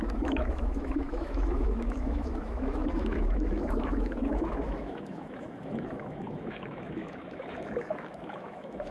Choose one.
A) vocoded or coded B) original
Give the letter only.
A